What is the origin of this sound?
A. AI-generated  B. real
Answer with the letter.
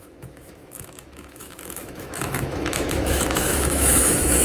A